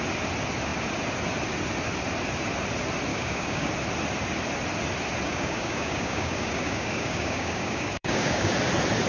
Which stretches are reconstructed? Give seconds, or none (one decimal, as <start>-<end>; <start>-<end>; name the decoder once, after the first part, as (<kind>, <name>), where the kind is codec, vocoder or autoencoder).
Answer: 3.1-3.7 (codec, DAC); 5.3-8.5